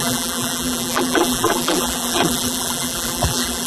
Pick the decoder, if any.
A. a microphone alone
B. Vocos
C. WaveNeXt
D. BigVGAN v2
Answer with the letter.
D